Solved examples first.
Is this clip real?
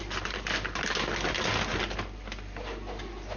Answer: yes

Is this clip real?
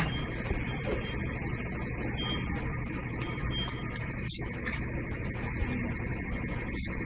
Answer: yes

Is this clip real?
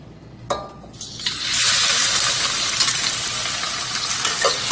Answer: yes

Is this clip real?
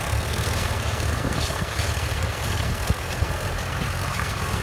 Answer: no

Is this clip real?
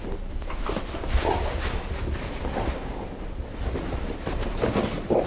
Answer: yes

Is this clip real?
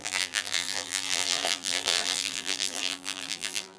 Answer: no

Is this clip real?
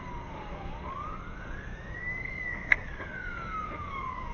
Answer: no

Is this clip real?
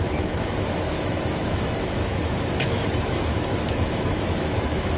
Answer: no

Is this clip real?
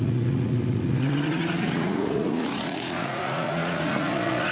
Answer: no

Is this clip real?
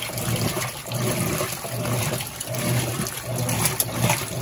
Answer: yes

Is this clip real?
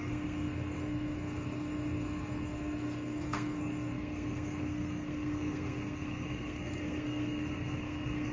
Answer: no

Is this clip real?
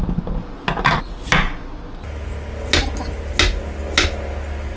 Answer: yes